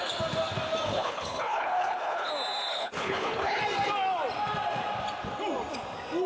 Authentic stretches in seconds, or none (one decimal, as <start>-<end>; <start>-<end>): 0.0-0.9; 2.3-2.7; 3.6-6.3